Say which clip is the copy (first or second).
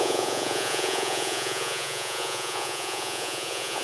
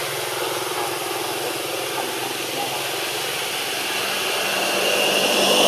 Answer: first